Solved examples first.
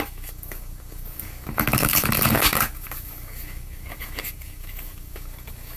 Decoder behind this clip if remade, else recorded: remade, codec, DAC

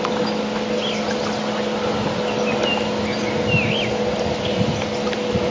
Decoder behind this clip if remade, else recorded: recorded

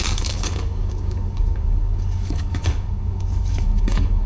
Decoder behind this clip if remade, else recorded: remade, codec, DAC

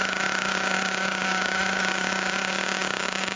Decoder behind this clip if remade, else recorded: remade, codec, DAC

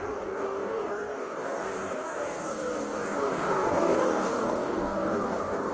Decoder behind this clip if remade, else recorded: remade, codec, DAC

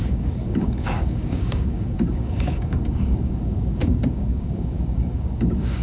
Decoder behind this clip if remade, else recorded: remade, codec, DAC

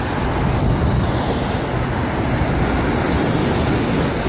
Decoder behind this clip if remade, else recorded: recorded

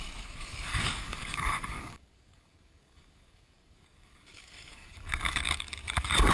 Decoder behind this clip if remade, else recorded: remade, codec, DAC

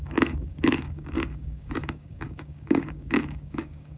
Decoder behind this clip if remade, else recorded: remade, codec, DAC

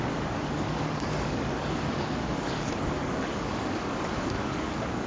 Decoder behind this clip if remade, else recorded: remade, codec, DAC